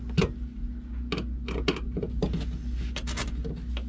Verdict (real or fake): real